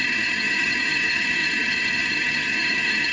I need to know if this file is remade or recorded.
remade